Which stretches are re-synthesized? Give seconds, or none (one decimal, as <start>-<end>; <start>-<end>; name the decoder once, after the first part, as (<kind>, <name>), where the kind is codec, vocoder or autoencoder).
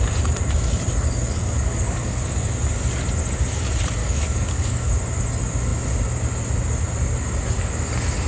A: 1.4-2.2 (codec, DAC); 4.0-4.9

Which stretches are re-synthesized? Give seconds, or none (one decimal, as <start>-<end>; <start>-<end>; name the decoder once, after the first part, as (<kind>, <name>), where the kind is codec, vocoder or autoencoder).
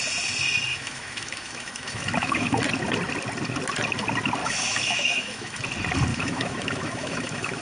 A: 0.7-2.6 (autoencoder, DAC-VAE); 4.4-5.6; 6.1-7.6